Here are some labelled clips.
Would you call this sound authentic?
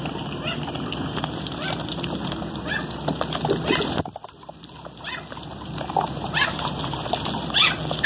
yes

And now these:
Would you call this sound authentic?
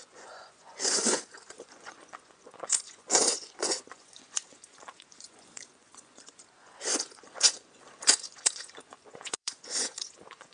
no